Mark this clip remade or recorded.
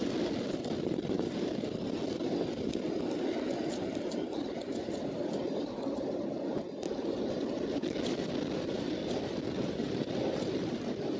recorded